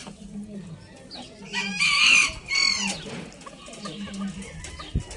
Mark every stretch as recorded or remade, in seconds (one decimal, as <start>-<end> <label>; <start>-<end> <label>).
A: 0.0-5.2 recorded